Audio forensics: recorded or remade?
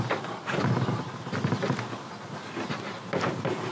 recorded